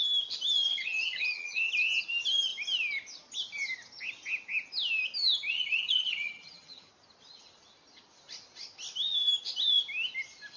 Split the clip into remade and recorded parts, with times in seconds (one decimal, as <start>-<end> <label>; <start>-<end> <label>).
0.0-0.7 recorded; 0.7-1.7 remade; 1.7-5.5 recorded; 5.5-6.9 remade; 6.9-10.6 recorded